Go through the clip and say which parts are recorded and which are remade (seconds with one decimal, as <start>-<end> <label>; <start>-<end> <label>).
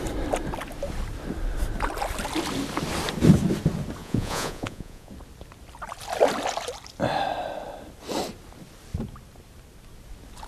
0.0-4.0 recorded; 4.0-5.1 remade; 5.1-10.5 recorded